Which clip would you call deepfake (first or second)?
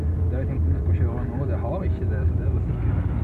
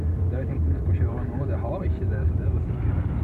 second